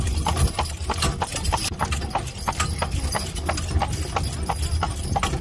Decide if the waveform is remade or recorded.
recorded